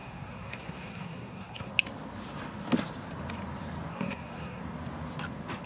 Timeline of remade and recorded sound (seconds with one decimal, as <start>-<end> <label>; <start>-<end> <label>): 0.0-1.7 remade; 1.7-3.9 recorded; 3.9-4.6 remade; 4.6-5.7 recorded